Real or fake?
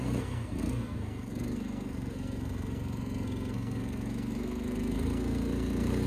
fake